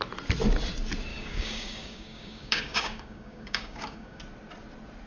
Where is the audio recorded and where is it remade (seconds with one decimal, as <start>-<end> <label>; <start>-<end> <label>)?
0.0-1.1 recorded; 1.1-4.2 remade; 4.2-5.1 recorded